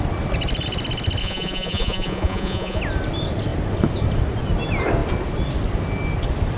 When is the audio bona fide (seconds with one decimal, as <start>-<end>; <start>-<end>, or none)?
0.0-1.2; 2.8-6.6